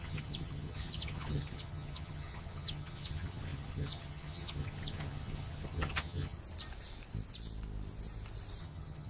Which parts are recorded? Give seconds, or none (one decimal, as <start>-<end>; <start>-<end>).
6.4-8.6